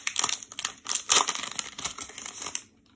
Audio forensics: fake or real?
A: real